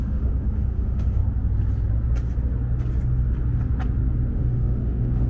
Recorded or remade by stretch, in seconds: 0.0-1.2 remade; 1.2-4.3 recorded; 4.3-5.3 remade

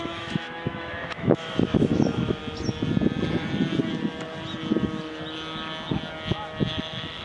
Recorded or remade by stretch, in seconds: 0.0-2.4 remade; 2.4-6.7 recorded; 6.7-7.2 remade

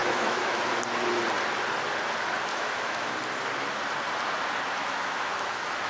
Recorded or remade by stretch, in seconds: 0.0-0.7 remade; 0.7-2.5 recorded; 2.5-3.2 remade; 3.2-4.8 recorded; 4.8-5.9 remade

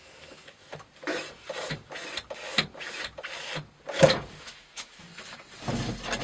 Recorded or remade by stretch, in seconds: 0.0-0.7 remade; 0.7-4.4 recorded; 4.4-5.1 remade; 5.1-6.2 recorded

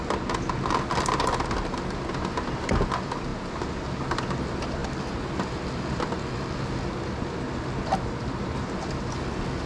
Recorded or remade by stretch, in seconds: 0.0-9.7 recorded